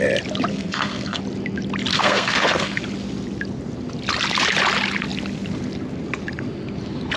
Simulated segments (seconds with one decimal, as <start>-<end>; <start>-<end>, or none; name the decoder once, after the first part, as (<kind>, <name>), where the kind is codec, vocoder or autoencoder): 0.5-1.2 (codec, SNAC); 1.9-2.8